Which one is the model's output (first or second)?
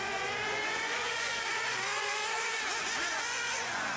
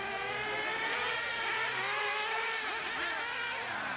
first